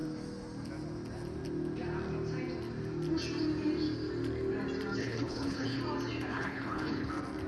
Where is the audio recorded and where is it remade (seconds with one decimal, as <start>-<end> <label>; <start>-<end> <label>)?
0.0-5.0 recorded; 5.0-5.8 remade; 5.8-6.3 recorded; 6.3-7.1 remade; 7.1-7.5 recorded